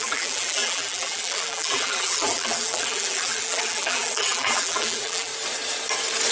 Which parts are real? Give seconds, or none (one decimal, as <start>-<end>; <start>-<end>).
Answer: 5.3-6.3